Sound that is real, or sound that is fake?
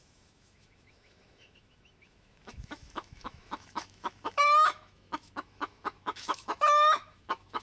fake